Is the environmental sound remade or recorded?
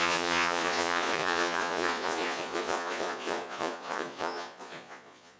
remade